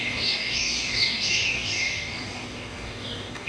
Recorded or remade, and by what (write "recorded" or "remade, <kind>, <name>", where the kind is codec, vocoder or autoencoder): remade, codec, DAC